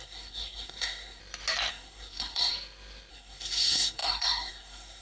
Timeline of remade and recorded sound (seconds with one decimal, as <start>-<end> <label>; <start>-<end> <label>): 0.0-1.2 remade; 1.2-1.7 recorded; 1.7-2.5 remade; 2.5-3.1 recorded; 3.1-5.0 remade